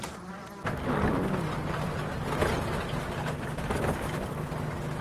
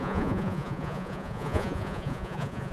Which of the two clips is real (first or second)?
first